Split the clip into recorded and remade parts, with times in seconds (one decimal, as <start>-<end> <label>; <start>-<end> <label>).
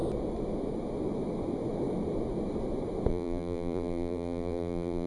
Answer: 0.0-3.1 recorded; 3.1-5.1 remade